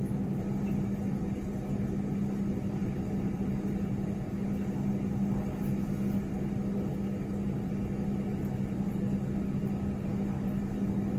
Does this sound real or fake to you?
real